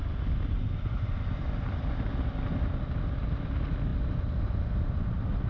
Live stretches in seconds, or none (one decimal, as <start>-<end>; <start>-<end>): 0.0-5.5